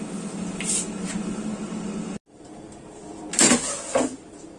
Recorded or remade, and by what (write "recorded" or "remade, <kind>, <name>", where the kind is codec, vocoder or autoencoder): recorded